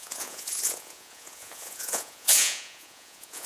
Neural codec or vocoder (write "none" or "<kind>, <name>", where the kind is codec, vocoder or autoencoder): vocoder, Vocos